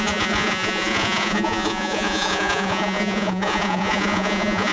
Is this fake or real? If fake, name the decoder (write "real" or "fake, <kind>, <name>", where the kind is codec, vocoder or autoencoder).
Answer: fake, vocoder, Vocos